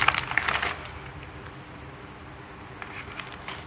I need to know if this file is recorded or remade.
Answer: recorded